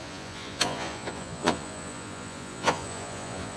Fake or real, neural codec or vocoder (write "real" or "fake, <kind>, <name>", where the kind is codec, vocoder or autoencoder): fake, vocoder, Vocos